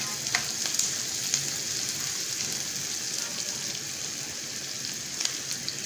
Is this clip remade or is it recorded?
recorded